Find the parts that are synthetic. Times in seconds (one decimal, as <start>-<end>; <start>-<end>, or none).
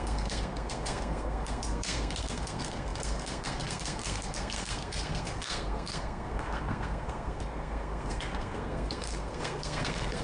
0.0-10.2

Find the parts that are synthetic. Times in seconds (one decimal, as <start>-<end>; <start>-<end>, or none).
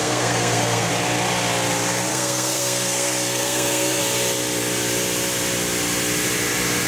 0.0-0.9; 2.1-4.0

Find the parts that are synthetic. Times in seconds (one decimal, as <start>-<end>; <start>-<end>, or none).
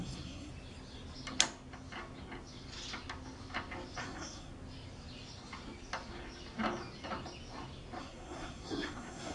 0.0-0.5; 4.0-4.5; 8.0-9.3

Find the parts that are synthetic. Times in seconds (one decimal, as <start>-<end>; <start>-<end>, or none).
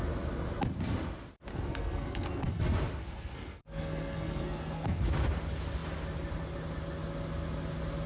1.5-2.6; 3.0-5.0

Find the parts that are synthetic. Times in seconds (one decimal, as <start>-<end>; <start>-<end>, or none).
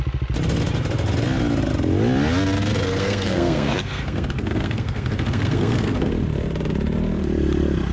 2.8-6.1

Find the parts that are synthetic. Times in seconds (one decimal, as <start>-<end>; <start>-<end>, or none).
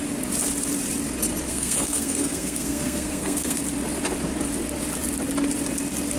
1.5-3.6